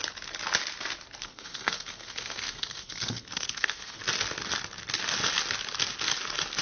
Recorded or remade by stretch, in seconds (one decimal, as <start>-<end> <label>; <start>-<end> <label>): 0.0-1.2 recorded; 1.2-4.0 remade; 4.0-6.6 recorded